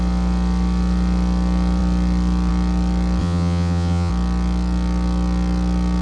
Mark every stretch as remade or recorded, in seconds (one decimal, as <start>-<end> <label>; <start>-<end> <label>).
0.0-3.2 recorded; 3.2-4.1 remade; 4.1-6.0 recorded